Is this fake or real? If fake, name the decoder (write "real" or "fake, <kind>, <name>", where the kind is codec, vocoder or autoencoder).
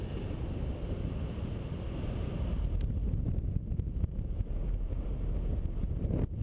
real